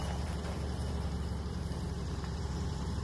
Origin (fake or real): fake